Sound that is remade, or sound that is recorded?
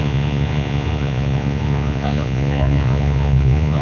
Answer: remade